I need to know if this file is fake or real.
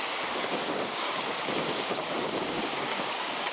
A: fake